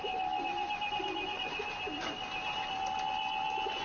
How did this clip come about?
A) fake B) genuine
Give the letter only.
B